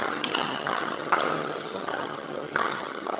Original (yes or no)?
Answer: no